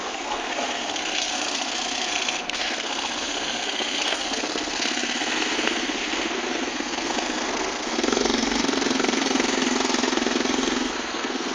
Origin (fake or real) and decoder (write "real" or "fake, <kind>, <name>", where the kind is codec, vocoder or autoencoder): fake, codec, SNAC